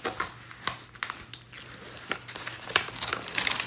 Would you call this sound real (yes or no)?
yes